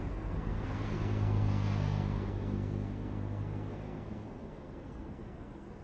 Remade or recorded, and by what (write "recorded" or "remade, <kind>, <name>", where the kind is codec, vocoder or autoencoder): remade, codec, SNAC